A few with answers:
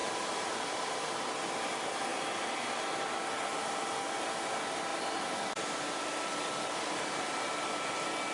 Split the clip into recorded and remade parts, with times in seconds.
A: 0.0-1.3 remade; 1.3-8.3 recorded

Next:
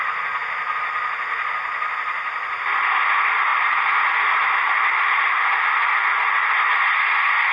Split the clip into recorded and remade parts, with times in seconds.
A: 0.0-3.5 recorded; 3.5-5.5 remade; 5.5-7.5 recorded

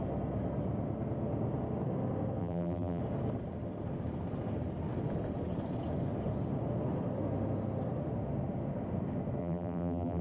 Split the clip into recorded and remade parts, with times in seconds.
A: 0.0-2.4 recorded; 2.4-3.0 remade; 3.0-9.4 recorded; 9.4-10.2 remade

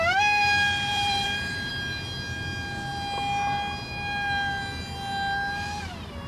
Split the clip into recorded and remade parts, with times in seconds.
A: 0.0-0.9 recorded; 0.9-1.7 remade; 1.7-6.3 recorded

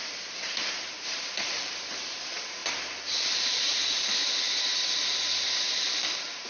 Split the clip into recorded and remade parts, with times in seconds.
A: 0.0-1.0 recorded; 1.0-2.6 remade; 2.6-3.1 recorded; 3.1-4.7 remade; 4.7-5.7 recorded; 5.7-6.5 remade

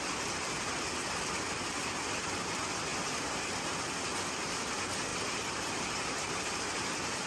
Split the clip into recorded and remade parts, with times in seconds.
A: 0.0-5.1 recorded; 5.1-6.3 remade; 6.3-7.3 recorded

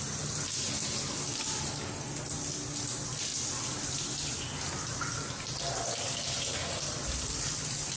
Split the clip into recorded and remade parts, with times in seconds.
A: 0.0-3.3 recorded; 3.3-3.9 remade; 3.9-8.0 recorded

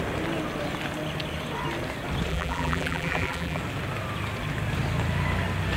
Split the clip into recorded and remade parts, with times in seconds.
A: 0.0-2.3 recorded; 2.3-3.6 remade; 3.6-5.8 recorded